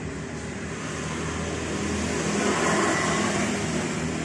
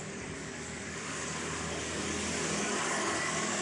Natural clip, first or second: first